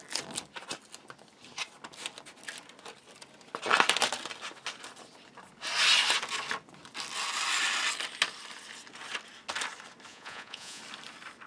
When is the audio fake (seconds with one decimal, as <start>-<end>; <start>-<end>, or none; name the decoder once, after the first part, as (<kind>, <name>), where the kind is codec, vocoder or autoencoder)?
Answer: 10.1-10.8 (vocoder, Vocos)